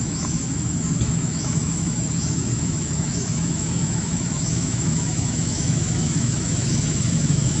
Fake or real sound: fake